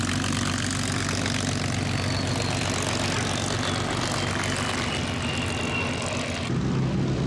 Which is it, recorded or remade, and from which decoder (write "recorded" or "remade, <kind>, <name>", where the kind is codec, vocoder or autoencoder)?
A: recorded